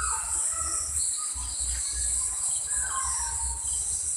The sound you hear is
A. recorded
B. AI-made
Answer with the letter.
A